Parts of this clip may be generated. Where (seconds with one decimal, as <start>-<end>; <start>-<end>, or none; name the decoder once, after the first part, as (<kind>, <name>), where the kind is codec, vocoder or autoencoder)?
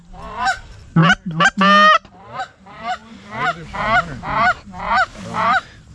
none